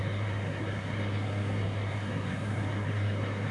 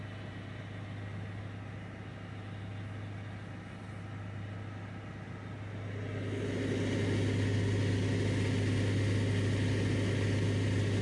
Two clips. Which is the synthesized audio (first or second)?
first